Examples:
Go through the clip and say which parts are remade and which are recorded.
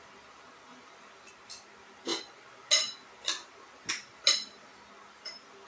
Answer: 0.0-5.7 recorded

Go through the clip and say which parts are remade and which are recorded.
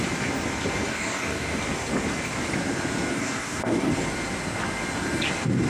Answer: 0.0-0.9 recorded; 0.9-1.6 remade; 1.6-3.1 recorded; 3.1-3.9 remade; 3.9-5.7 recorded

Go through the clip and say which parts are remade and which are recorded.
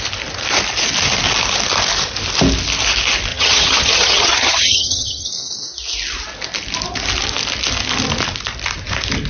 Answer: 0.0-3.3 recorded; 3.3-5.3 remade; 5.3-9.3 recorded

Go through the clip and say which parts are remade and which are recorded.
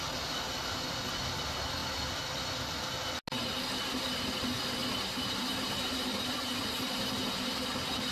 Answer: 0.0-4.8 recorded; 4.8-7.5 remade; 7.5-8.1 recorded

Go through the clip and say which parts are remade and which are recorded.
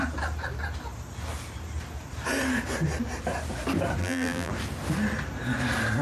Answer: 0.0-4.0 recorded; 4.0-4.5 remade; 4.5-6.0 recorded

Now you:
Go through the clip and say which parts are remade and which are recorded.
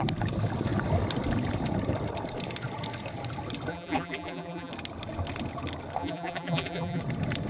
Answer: 0.0-3.7 recorded; 3.7-4.7 remade; 4.7-6.0 recorded; 6.0-7.0 remade; 7.0-7.5 recorded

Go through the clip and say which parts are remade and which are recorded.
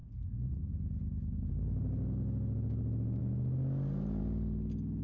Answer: 0.0-5.0 recorded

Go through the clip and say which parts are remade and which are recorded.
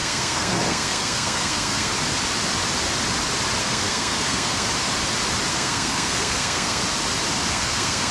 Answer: 0.0-1.9 remade; 1.9-3.6 recorded; 3.6-4.7 remade; 4.7-5.5 recorded; 5.5-6.8 remade; 6.8-7.5 recorded; 7.5-8.1 remade